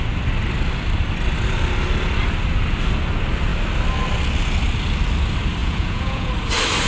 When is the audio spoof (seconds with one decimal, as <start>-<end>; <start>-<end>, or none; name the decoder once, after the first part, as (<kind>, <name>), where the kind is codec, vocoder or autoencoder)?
5.6-6.3 (vocoder, Vocos)